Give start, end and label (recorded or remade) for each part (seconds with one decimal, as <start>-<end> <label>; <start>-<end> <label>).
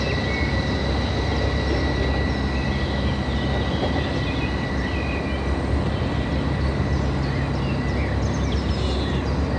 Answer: 0.0-9.6 recorded